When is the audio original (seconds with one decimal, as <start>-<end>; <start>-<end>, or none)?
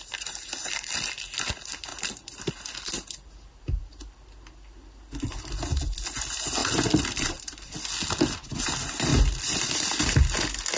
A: 0.0-1.9; 2.5-6.6; 7.3-9.1; 9.7-10.8